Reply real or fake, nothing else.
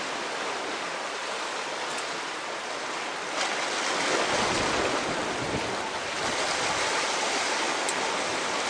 real